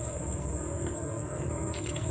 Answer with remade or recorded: remade